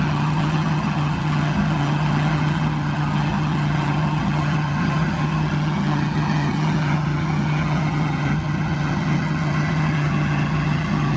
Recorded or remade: remade